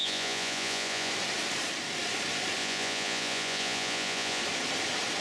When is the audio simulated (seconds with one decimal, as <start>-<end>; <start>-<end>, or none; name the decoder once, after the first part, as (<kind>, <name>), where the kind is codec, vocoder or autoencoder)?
0.0-1.1 (vocoder, Vocos); 2.6-4.4